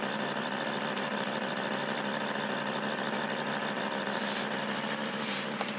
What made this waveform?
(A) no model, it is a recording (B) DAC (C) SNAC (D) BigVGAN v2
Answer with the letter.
A